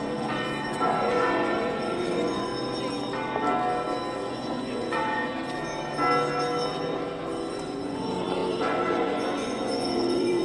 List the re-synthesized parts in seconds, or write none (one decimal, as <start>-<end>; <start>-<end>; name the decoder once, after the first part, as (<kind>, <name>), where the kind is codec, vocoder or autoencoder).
0.0-2.5 (vocoder, Vocos); 4.3-5.3; 7.5-10.4